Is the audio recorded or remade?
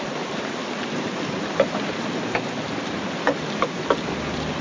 recorded